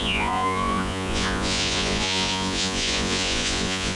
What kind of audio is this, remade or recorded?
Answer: remade